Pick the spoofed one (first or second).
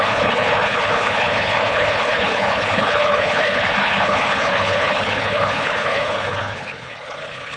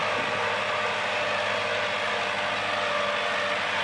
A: first